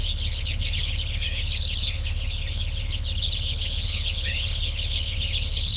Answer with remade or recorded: remade